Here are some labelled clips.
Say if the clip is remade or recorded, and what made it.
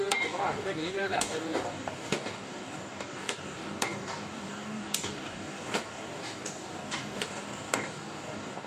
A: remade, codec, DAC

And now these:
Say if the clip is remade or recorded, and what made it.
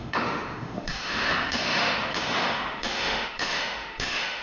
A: remade, autoencoder, DAC-VAE